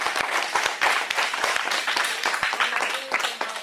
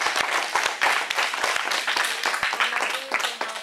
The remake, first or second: first